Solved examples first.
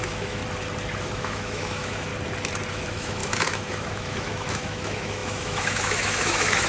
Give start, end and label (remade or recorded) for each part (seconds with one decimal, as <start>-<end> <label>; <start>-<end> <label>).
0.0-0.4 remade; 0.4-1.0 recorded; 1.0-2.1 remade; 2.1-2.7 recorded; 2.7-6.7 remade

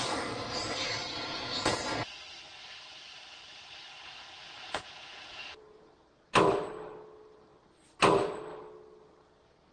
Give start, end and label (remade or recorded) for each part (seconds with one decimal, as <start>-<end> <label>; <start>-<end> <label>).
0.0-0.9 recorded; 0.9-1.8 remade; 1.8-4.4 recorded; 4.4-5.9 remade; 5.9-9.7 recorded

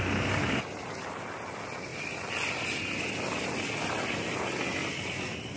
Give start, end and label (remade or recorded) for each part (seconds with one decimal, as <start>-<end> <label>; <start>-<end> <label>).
0.0-5.6 recorded

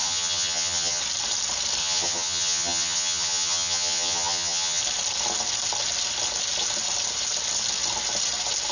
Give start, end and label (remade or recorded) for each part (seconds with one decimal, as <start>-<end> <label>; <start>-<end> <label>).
0.0-1.0 remade; 1.0-1.8 recorded; 1.8-4.8 remade; 4.8-8.7 recorded

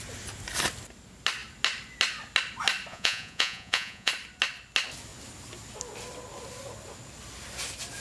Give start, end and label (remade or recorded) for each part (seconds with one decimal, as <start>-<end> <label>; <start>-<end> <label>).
0.0-2.9 recorded; 2.9-4.1 remade; 4.1-8.0 recorded

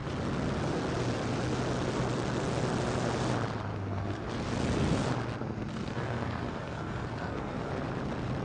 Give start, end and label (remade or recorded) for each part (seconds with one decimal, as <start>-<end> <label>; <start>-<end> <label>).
0.0-3.7 recorded; 3.7-4.3 remade; 4.3-5.7 recorded; 5.7-7.7 remade; 7.7-8.4 recorded

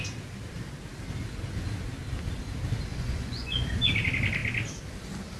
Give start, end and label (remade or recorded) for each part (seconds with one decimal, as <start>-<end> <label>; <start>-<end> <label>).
0.0-2.9 recorded; 2.9-3.9 remade; 3.9-5.4 recorded

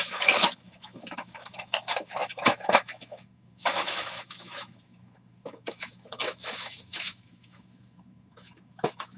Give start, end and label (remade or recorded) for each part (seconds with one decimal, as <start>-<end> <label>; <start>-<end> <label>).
0.0-9.2 remade